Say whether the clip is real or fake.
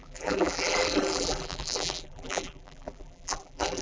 fake